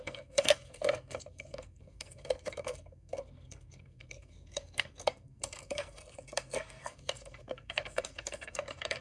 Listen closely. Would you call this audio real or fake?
fake